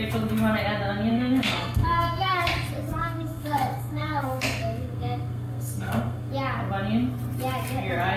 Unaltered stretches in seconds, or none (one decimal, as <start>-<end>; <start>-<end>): 0.0-1.1; 2.4-3.0; 6.3-8.2